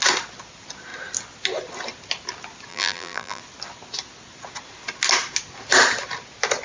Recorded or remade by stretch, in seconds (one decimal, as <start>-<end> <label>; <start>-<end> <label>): 0.0-2.7 recorded; 2.7-3.4 remade; 3.4-6.6 recorded